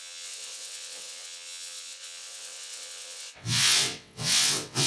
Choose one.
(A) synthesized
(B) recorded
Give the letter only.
A